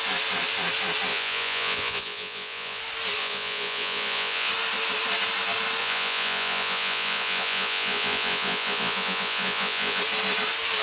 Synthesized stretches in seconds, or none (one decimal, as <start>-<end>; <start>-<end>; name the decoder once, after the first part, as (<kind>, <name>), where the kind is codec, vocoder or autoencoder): 1.1-2.8 (vocoder, Vocos); 3.2-4.5; 5.8-10.0